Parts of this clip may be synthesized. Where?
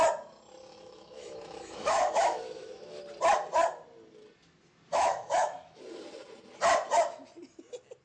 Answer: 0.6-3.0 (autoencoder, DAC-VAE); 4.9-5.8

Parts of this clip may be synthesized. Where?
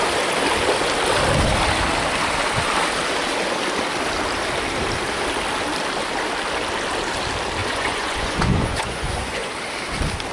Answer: 7.6-9.5 (vocoder, Vocos)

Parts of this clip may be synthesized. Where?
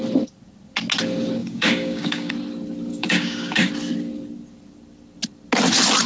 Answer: 1.4-2.3 (codec, DAC); 2.9-3.7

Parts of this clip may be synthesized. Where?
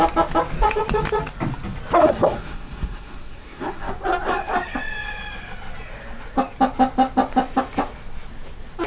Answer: 2.0-3.9 (codec, SNAC)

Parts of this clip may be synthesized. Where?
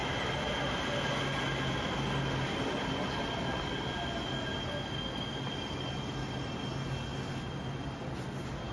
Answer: none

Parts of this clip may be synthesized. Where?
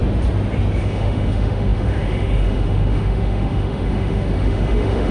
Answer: 0.8-5.1 (autoencoder, DAC-VAE)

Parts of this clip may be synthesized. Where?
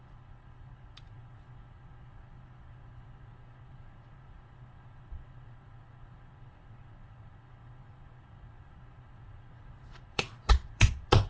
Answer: 0.0-11.3 (vocoder, Vocos)